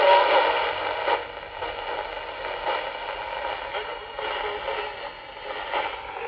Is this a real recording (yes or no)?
yes